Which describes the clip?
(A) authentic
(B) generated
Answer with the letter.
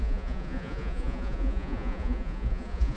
B